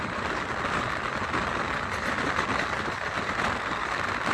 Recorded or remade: recorded